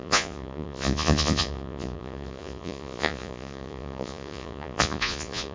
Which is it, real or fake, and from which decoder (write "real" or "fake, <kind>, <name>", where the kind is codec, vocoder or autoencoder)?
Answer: fake, vocoder, Vocos